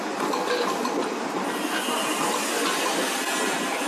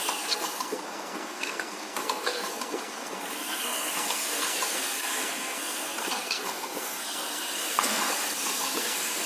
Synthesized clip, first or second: second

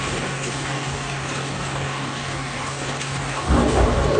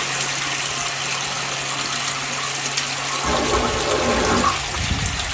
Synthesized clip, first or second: first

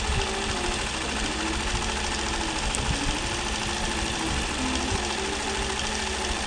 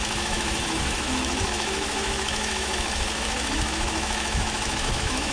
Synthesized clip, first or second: second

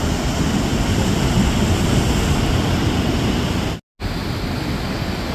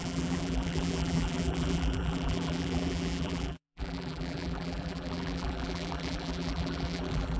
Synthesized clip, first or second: second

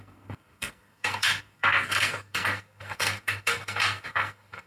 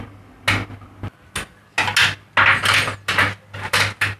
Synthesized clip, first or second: first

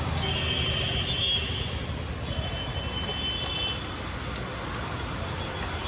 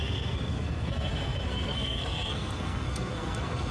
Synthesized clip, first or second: second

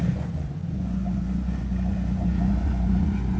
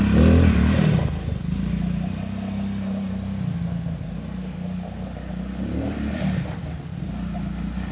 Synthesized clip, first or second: first